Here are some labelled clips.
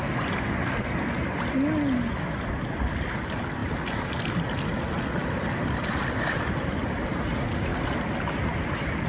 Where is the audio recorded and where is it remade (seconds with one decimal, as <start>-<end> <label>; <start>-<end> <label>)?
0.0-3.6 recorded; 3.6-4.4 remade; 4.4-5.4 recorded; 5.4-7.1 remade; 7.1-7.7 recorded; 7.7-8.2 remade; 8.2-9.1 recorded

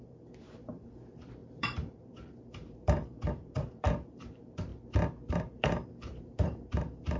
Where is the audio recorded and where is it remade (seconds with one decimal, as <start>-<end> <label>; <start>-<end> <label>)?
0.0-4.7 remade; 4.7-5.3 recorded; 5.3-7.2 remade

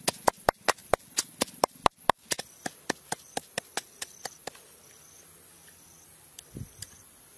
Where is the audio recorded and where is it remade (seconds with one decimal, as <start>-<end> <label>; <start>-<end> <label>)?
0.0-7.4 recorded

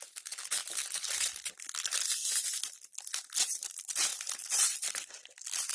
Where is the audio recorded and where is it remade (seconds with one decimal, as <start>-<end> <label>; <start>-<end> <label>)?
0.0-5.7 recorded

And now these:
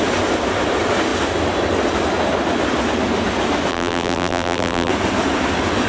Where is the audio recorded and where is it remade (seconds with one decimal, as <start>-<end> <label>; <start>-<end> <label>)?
0.0-3.7 recorded; 3.7-4.9 remade; 4.9-5.9 recorded

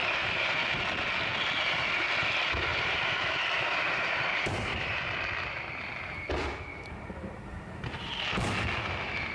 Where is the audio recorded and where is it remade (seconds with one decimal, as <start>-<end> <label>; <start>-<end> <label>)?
0.0-0.8 remade; 0.8-2.7 recorded; 2.7-5.2 remade; 5.2-6.7 recorded; 6.7-7.3 remade; 7.3-9.3 recorded